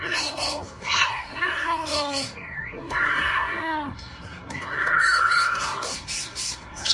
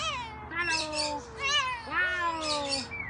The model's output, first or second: first